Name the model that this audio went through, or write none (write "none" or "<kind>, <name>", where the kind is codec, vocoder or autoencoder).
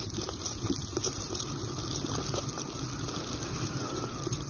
none